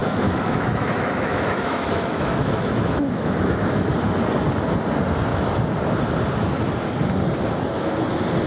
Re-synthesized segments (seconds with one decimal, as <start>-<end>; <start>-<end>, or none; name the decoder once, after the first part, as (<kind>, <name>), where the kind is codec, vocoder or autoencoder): 0.0-3.9 (autoencoder, DAC-VAE)